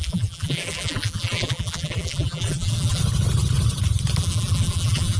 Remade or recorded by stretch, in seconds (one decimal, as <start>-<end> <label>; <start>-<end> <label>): 0.0-3.0 remade; 3.0-4.2 recorded; 4.2-5.2 remade